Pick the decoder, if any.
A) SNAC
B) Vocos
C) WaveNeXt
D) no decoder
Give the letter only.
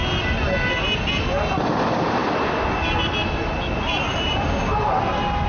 D